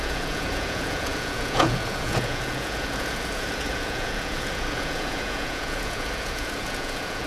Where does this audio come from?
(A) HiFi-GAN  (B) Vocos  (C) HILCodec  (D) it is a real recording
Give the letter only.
B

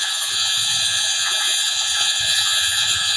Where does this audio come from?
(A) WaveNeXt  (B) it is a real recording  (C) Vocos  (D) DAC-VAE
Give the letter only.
C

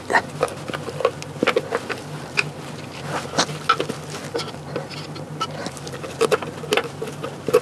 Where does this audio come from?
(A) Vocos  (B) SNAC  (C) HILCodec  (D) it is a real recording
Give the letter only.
D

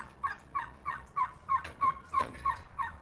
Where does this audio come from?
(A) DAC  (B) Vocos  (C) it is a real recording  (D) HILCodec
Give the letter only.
B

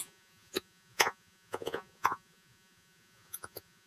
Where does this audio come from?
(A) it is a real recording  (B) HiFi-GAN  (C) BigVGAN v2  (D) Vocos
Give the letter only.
D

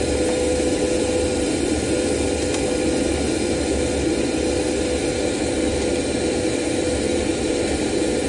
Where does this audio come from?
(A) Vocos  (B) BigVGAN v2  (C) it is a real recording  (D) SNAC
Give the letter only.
C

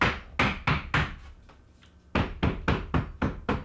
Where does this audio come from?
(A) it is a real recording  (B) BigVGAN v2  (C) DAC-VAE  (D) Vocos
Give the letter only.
A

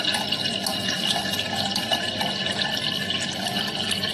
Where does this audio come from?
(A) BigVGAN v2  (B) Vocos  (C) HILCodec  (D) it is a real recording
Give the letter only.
D